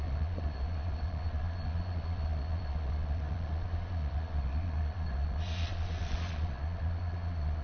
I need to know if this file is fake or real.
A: fake